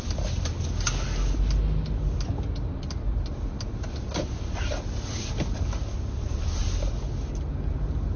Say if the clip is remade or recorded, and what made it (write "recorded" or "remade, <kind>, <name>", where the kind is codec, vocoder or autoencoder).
recorded